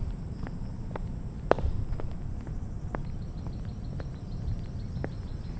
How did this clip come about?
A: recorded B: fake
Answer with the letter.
A